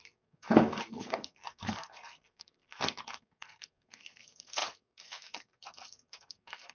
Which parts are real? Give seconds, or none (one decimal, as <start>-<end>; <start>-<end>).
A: none